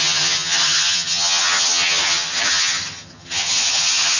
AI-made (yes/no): yes